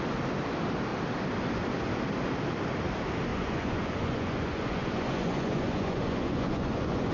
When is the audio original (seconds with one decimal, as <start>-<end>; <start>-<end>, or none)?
0.0-3.3